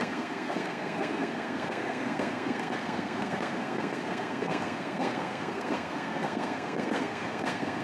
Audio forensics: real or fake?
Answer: fake